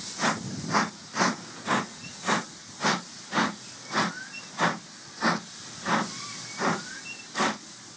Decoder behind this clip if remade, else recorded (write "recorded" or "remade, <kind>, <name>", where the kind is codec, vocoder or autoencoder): recorded